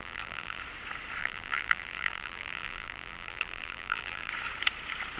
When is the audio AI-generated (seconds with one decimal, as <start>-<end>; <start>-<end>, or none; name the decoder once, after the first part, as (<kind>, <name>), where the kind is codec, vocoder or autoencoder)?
0.0-0.6 (vocoder, BigVGAN v2); 1.2-4.3